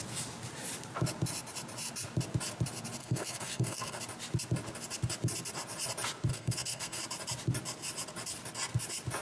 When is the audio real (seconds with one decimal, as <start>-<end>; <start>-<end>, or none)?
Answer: 0.0-3.0; 4.0-6.3; 7.0-9.2